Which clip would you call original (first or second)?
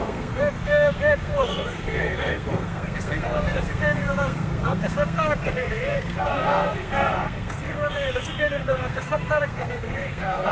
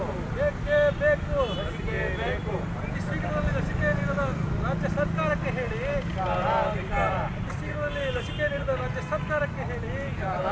second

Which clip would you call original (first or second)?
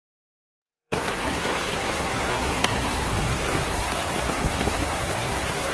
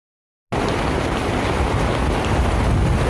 second